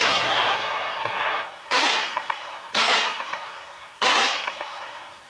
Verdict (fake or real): fake